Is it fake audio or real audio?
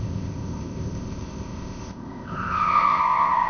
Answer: fake